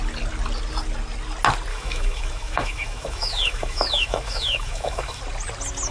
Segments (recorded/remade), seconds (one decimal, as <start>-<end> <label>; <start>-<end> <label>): 0.0-1.7 recorded; 1.7-5.2 remade; 5.2-5.9 recorded